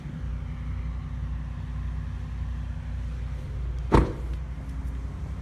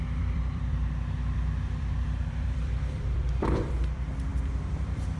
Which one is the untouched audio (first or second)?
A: first